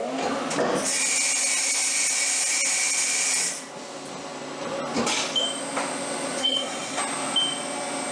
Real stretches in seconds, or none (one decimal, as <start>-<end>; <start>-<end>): 0.0-6.4; 7.0-8.1